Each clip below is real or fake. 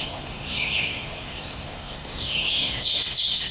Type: fake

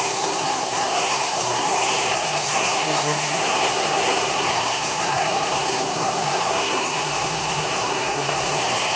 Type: fake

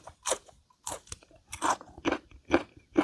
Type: real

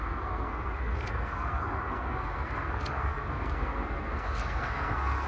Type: fake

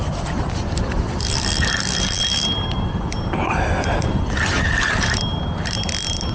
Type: real